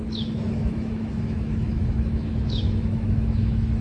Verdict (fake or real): fake